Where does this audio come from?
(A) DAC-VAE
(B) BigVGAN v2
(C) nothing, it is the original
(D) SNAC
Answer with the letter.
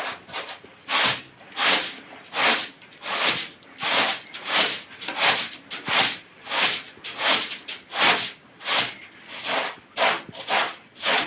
C